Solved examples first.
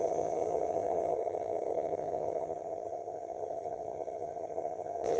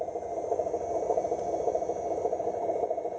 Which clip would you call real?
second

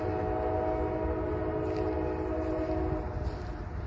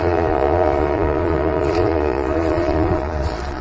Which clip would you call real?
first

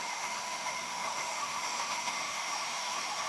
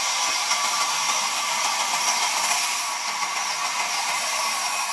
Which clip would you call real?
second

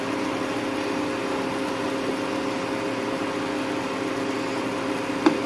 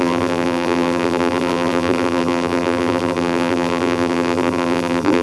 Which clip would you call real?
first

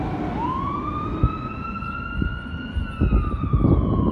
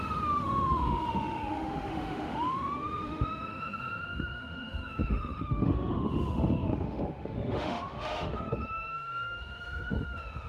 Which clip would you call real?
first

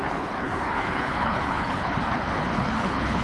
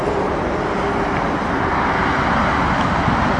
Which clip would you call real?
second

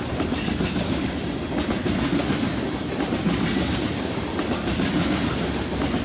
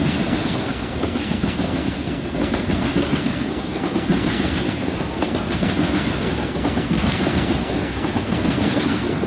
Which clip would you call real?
first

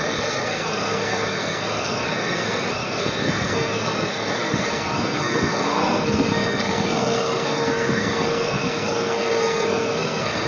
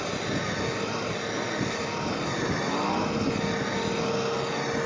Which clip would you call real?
second